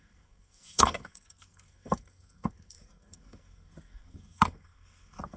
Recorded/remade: remade